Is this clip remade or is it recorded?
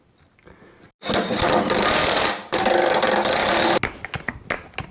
recorded